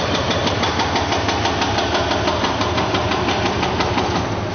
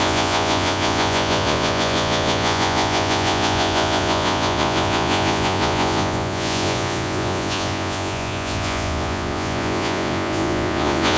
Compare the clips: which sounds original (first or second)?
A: first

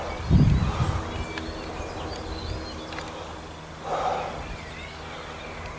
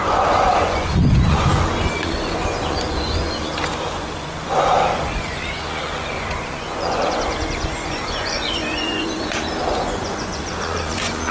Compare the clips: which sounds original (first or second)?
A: first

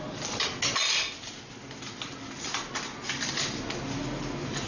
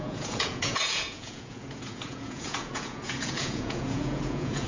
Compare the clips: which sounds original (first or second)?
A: first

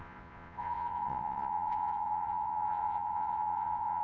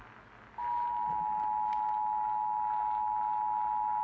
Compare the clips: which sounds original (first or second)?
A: second